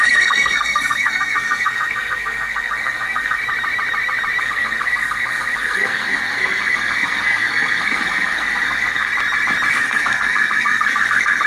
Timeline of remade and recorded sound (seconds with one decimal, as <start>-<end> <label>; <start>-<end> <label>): 0.0-3.4 remade; 3.4-4.4 recorded; 4.4-9.1 remade; 9.1-9.7 recorded; 9.7-11.5 remade